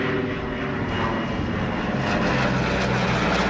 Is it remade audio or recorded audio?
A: recorded